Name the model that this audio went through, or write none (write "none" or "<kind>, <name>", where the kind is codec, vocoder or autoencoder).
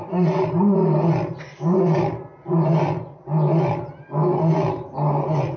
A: none